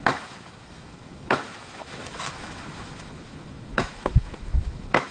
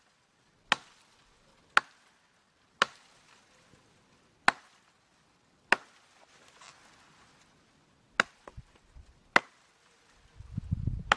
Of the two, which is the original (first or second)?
second